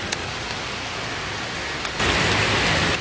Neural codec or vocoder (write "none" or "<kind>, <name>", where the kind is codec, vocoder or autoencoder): none